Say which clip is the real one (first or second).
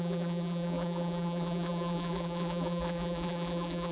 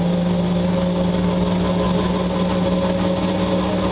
second